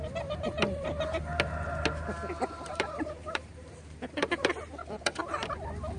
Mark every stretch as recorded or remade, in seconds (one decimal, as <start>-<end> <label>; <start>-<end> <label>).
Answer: 0.0-1.3 remade; 1.3-2.3 recorded; 2.3-6.0 remade